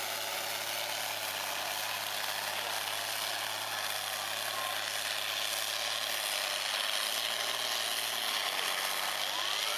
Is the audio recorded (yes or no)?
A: yes